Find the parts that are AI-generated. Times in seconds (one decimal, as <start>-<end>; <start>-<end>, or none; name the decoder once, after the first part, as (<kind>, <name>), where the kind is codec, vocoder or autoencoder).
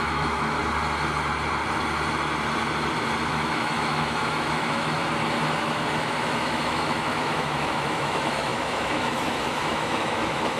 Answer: 0.0-0.6 (autoencoder, DAC-VAE); 3.3-5.0; 5.6-10.6